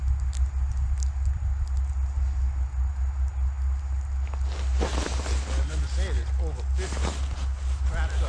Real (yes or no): yes